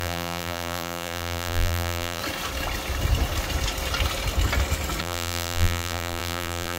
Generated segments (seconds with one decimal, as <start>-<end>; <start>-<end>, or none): 0.0-2.2; 5.0-6.8